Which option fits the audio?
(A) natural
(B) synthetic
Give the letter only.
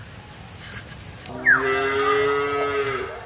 A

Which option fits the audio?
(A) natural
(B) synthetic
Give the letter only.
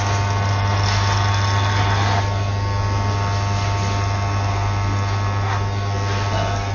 A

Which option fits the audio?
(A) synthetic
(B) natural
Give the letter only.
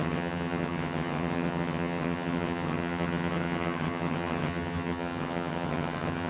A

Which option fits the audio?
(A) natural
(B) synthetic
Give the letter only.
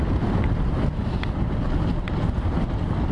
A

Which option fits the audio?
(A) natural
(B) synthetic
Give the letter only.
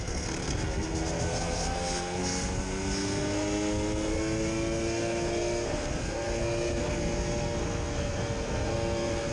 B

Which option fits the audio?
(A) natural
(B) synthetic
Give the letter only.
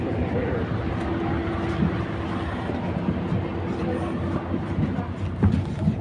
A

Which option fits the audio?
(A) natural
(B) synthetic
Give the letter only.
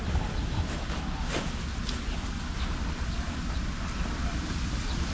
A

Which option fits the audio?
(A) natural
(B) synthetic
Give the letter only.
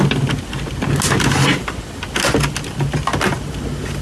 A